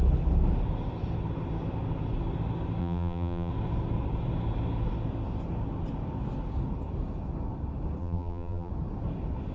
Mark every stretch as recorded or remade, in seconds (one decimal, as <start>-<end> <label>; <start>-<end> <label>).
0.0-2.8 recorded; 2.8-3.5 remade; 3.5-8.0 recorded; 8.0-8.7 remade; 8.7-9.5 recorded